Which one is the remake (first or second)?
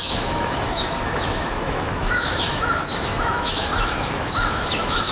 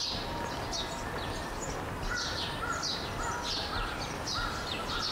first